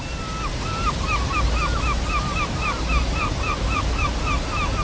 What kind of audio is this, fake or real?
real